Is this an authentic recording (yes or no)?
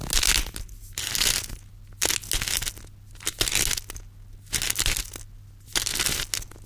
yes